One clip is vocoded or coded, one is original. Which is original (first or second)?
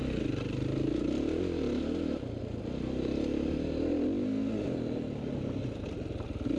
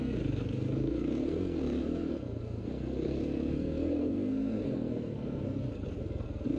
first